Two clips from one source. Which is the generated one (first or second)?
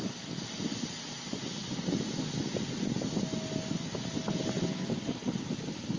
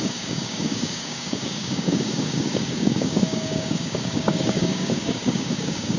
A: second